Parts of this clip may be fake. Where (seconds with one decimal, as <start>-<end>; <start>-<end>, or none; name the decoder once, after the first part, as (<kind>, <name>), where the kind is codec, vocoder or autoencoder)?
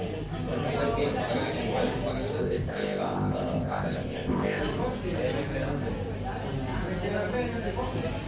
2.4-4.6 (codec, ZipCodec)